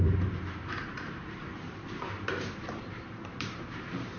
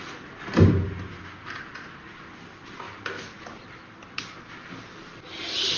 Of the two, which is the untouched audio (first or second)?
second